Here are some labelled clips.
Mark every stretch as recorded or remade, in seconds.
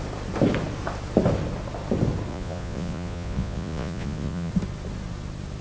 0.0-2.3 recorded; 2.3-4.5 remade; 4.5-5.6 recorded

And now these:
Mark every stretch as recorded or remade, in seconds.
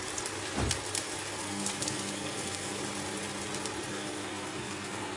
0.0-1.4 recorded; 1.4-2.8 remade; 2.8-3.9 recorded; 3.9-5.2 remade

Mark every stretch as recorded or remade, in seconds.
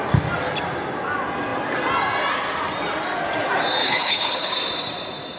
0.0-3.8 recorded; 3.8-4.5 remade; 4.5-5.4 recorded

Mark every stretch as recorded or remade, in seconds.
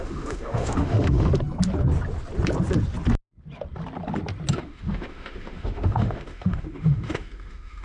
0.0-1.3 remade; 1.3-4.5 recorded; 4.5-7.8 remade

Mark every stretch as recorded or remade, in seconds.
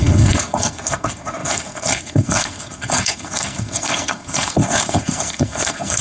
0.0-6.0 remade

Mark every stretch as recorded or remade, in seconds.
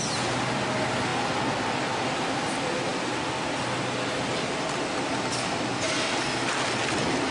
0.0-7.3 recorded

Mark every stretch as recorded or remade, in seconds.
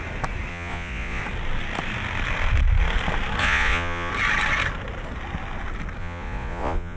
0.0-0.5 recorded; 0.5-1.2 remade; 1.2-3.4 recorded; 3.4-4.1 remade; 4.1-6.0 recorded; 6.0-7.0 remade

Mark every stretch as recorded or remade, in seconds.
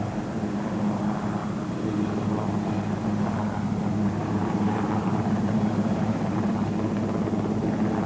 0.0-4.2 recorded; 4.2-6.5 remade; 6.5-8.1 recorded